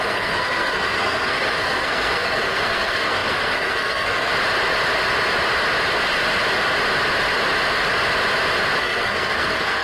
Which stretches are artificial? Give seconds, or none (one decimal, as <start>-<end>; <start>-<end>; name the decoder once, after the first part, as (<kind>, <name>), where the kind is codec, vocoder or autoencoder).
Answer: 0.0-4.3 (codec, SNAC); 8.8-9.8